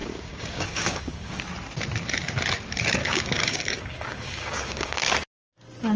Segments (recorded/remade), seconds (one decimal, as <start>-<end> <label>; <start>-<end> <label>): 0.0-1.4 remade; 1.4-3.0 recorded; 3.0-5.1 remade; 5.1-6.0 recorded